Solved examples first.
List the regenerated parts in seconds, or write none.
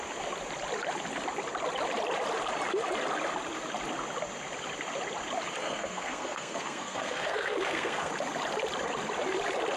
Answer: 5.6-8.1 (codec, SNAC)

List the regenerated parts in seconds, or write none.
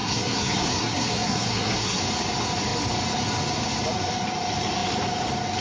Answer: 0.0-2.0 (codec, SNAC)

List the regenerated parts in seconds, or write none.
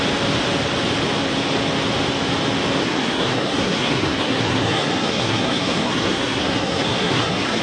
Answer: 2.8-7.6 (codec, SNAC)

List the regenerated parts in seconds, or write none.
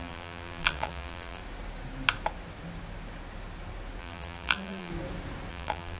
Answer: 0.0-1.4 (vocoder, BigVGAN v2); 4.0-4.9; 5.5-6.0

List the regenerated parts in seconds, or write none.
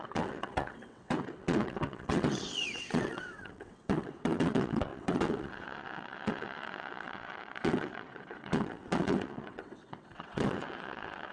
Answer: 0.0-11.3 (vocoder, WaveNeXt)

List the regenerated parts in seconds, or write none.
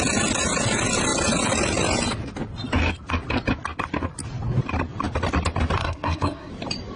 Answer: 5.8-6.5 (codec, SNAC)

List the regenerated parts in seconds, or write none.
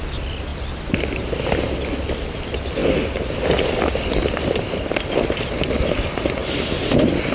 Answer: none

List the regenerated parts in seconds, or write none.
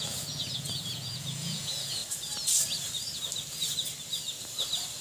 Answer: 0.0-2.0 (vocoder, Vocos)